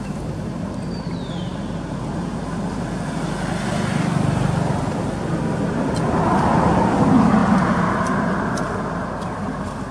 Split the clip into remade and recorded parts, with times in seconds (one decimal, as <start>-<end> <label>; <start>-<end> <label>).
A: 0.0-7.4 recorded; 7.4-7.9 remade; 7.9-9.9 recorded